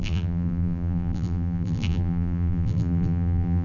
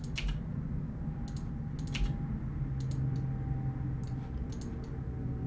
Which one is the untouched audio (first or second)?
second